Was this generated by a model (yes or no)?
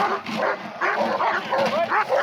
no